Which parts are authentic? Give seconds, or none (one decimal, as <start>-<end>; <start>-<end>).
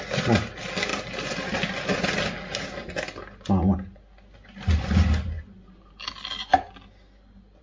0.0-7.6